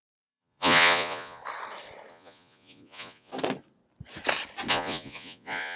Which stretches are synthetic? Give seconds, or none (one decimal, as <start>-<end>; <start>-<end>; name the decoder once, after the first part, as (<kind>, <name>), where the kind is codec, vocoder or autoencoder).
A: 0.0-1.4 (vocoder, Vocos); 2.1-3.3; 4.7-5.8